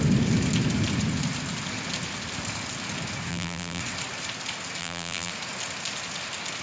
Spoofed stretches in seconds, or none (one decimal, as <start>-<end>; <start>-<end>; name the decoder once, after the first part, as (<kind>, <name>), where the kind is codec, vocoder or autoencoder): 3.3-3.8 (vocoder, BigVGAN v2); 4.8-5.3